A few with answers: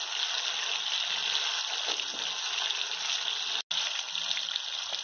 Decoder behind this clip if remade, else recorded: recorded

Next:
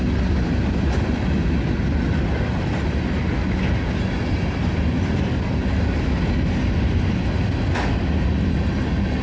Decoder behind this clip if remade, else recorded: recorded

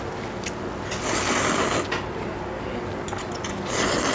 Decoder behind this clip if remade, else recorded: recorded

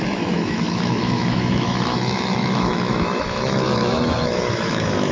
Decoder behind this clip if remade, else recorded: remade, autoencoder, DAC-VAE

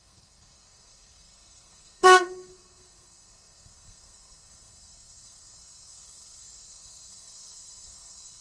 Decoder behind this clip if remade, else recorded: remade, codec, SNAC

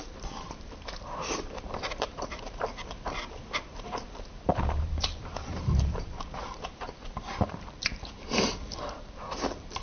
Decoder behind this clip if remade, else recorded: remade, vocoder, BigVGAN v2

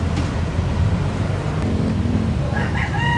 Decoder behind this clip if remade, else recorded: recorded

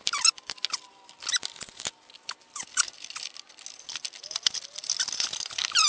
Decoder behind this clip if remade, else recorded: recorded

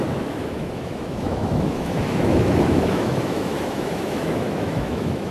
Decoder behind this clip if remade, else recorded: remade, autoencoder, DAC-VAE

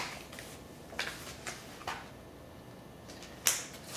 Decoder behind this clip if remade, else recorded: recorded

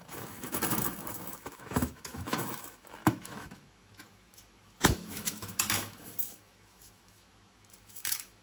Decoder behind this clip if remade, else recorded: remade, autoencoder, DAC-VAE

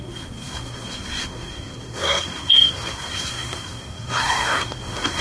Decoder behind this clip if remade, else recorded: remade, codec, SNAC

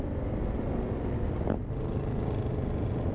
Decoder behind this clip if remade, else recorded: recorded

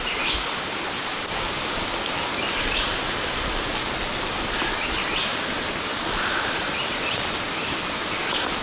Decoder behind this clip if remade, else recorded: recorded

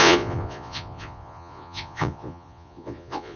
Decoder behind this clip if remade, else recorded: remade, vocoder, Vocos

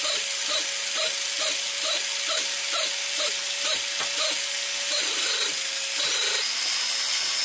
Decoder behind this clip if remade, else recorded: recorded